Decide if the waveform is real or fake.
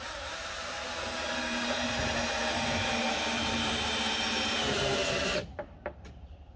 fake